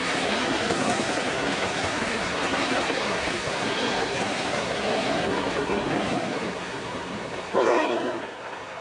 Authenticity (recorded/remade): remade